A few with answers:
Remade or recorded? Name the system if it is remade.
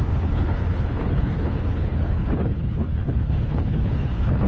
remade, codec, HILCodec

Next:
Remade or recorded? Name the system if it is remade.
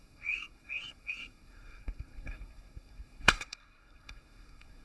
remade, codec, SNAC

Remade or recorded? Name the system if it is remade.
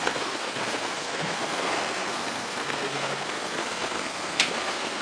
remade, codec, SNAC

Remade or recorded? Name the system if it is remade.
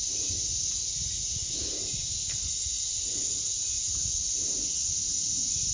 recorded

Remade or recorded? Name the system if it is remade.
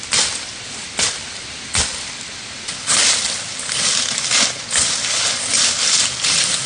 recorded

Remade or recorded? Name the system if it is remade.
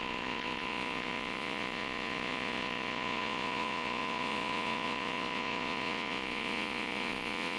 remade, vocoder, Vocos